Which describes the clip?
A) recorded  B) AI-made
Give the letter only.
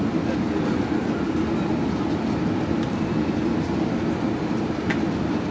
A